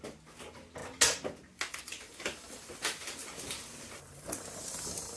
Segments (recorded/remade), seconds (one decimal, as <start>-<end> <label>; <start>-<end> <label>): 0.0-5.2 recorded